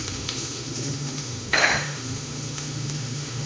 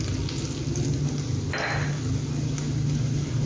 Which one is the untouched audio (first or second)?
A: second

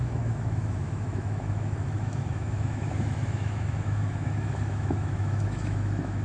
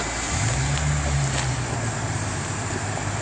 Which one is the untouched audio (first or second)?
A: second